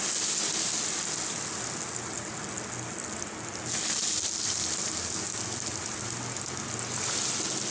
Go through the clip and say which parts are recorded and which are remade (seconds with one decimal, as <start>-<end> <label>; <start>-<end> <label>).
0.0-7.7 recorded